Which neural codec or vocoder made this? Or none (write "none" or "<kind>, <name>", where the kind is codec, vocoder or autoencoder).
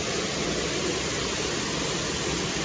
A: none